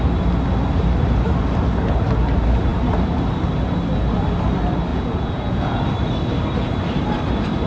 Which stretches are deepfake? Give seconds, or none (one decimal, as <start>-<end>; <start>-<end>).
4.9-5.8